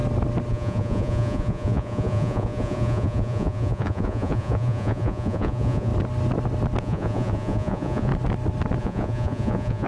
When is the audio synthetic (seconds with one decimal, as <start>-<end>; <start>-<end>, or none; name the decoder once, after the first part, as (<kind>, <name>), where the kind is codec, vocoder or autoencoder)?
0.5-5.9 (vocoder, Vocos); 6.8-8.1; 8.8-9.9